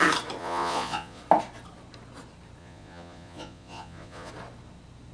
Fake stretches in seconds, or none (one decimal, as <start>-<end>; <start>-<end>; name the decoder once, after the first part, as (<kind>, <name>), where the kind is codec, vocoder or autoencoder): 0.4-1.2 (vocoder, Vocos); 2.6-4.3